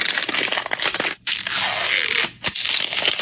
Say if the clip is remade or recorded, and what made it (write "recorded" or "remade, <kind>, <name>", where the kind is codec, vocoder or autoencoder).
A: recorded